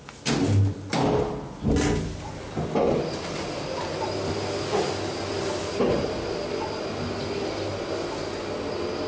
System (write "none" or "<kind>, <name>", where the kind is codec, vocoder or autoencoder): none